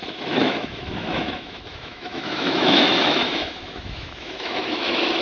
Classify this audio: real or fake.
fake